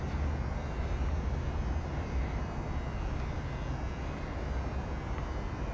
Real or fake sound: real